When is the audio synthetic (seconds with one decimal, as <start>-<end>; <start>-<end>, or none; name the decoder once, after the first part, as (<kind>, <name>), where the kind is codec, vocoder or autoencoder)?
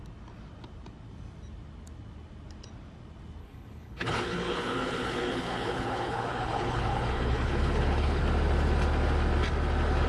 3.4-8.2 (codec, HILCodec)